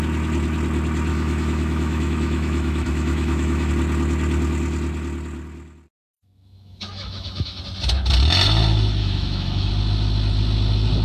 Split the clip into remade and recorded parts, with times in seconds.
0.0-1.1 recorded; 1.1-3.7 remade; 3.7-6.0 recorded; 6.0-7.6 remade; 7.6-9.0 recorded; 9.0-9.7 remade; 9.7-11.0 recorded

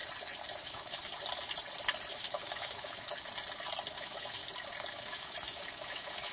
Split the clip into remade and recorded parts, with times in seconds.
0.0-0.6 recorded; 0.6-1.1 remade; 1.1-2.1 recorded; 2.1-3.1 remade; 3.1-3.9 recorded; 3.9-4.4 remade; 4.4-4.9 recorded; 4.9-6.3 remade